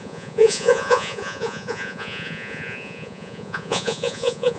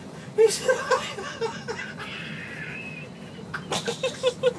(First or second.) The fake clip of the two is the first